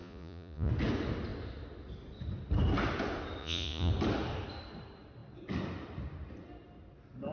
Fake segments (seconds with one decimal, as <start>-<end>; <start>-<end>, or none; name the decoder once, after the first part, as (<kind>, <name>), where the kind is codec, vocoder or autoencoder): 0.0-0.7 (vocoder, Vocos); 3.4-3.9